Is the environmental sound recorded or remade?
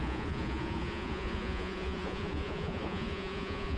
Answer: remade